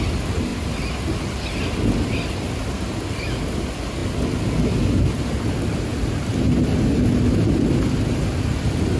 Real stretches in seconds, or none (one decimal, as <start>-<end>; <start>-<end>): 0.0-9.0